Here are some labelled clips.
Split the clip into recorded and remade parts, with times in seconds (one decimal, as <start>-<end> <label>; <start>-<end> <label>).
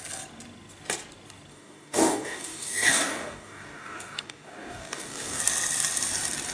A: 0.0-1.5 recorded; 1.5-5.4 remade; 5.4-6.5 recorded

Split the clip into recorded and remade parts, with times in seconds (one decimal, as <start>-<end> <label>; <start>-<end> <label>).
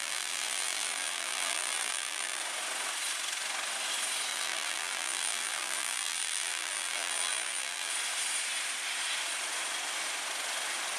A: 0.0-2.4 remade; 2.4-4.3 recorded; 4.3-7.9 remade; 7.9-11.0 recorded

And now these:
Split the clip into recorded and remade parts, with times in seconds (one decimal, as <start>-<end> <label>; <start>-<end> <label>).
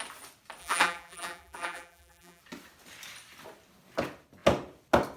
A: 0.0-0.6 recorded; 0.6-2.4 remade; 2.4-5.2 recorded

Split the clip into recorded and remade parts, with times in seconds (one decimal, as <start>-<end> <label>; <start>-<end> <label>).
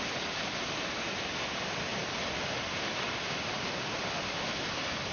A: 0.0-5.1 recorded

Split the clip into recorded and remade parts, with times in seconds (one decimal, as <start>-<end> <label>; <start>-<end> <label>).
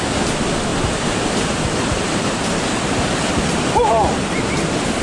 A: 0.0-0.7 recorded; 0.7-3.1 remade; 3.1-5.0 recorded